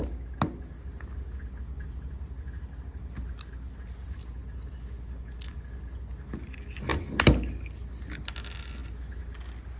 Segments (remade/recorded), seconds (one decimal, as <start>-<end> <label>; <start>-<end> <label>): 0.0-9.8 recorded

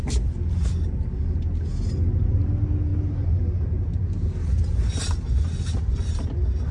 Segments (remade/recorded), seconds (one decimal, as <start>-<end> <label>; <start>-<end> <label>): 0.0-6.7 recorded